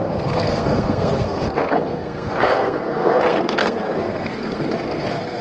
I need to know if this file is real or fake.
fake